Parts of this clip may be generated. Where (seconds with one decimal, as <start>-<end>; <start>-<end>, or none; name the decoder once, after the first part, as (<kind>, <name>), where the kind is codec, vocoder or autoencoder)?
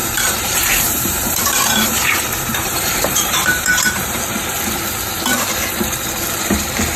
0.0-4.2 (vocoder, BigVGAN v2)